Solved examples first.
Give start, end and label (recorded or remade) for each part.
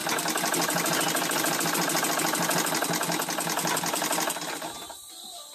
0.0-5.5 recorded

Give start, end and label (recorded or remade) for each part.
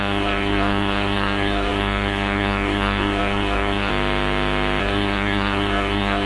0.0-3.9 remade; 3.9-4.8 recorded; 4.8-6.3 remade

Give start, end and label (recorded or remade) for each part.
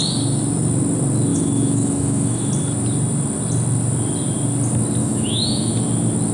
0.0-1.3 recorded; 1.3-2.5 remade; 2.5-5.0 recorded; 5.0-5.7 remade; 5.7-6.3 recorded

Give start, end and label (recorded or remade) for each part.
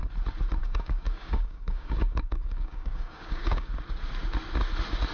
0.0-0.6 recorded; 0.6-3.7 remade; 3.7-5.1 recorded